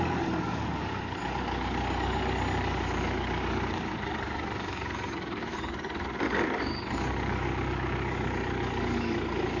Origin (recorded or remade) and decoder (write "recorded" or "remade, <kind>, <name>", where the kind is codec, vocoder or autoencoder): remade, codec, DAC